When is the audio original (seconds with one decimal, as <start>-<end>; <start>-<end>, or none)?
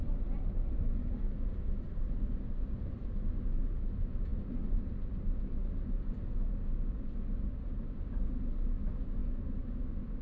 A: 0.0-10.2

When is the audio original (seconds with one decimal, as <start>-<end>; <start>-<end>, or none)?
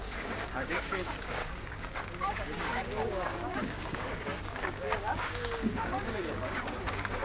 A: none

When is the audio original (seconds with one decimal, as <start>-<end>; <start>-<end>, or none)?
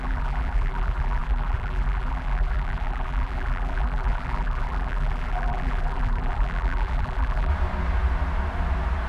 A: 7.5-9.1